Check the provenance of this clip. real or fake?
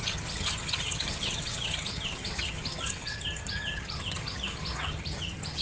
fake